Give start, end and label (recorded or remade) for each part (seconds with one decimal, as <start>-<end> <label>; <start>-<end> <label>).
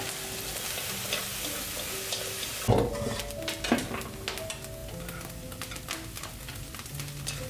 0.0-7.5 recorded